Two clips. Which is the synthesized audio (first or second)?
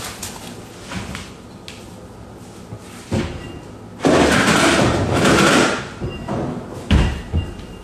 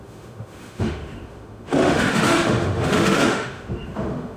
second